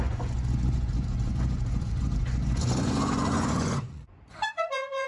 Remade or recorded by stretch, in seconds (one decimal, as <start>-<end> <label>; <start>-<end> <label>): 0.0-5.1 remade